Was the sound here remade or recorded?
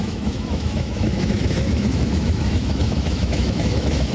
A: remade